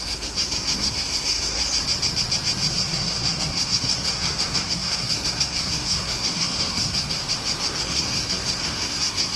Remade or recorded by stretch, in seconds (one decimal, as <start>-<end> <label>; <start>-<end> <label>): 0.0-1.6 remade; 1.6-2.7 recorded; 2.7-7.2 remade; 7.2-7.8 recorded; 7.8-9.4 remade